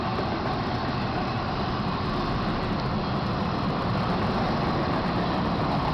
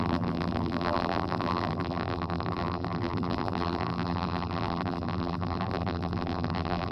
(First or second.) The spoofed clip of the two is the second